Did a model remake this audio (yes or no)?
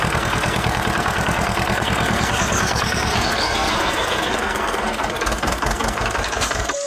yes